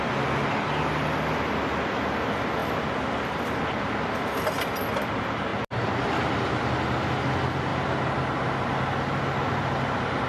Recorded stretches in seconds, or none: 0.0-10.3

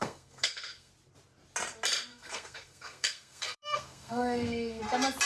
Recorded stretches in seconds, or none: 0.9-2.1; 4.8-5.3

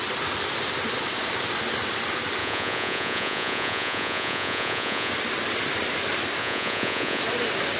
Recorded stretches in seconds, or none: 0.0-2.4; 5.1-6.4; 7.2-7.8